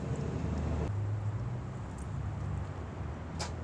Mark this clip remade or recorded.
recorded